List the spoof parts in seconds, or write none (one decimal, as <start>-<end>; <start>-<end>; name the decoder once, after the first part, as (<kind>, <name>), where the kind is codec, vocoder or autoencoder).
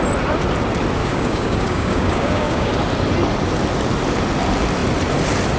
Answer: 1.0-2.7 (codec, DAC)